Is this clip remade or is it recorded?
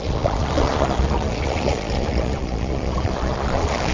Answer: remade